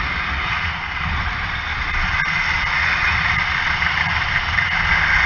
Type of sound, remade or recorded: recorded